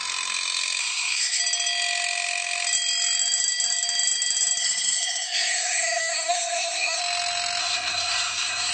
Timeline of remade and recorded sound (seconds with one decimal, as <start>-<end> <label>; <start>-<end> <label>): 0.0-0.8 recorded; 0.8-1.4 remade; 1.4-4.6 recorded; 4.6-7.0 remade; 7.0-7.6 recorded; 7.6-8.7 remade